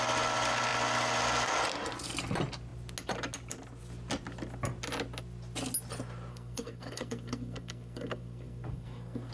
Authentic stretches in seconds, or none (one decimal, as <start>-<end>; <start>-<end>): 0.0-6.3